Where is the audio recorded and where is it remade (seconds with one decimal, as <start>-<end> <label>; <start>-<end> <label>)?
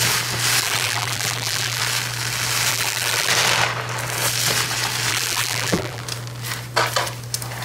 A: 0.0-0.6 recorded; 0.6-1.8 remade; 1.8-2.7 recorded; 2.7-3.3 remade; 3.3-5.1 recorded; 5.1-6.0 remade; 6.0-7.6 recorded